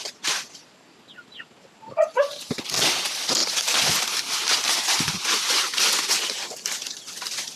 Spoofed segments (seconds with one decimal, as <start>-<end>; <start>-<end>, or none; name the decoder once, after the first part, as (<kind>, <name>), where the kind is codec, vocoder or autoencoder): none